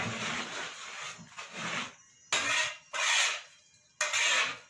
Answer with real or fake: real